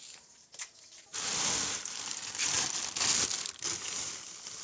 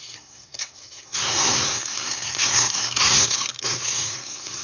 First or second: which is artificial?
second